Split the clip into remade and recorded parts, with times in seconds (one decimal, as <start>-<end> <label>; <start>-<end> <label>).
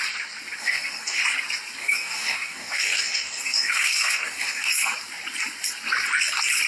0.0-0.6 recorded; 0.6-1.2 remade; 1.2-1.8 recorded; 1.8-4.7 remade; 4.7-6.7 recorded